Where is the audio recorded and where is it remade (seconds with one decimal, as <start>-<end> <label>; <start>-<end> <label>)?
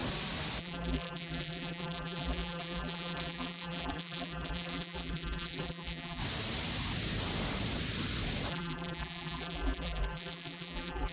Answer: 0.0-0.6 recorded; 0.6-6.2 remade; 6.2-8.5 recorded; 8.5-11.1 remade